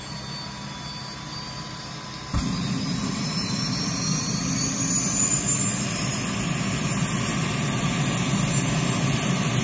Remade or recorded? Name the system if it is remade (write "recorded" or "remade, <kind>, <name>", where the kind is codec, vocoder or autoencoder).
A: recorded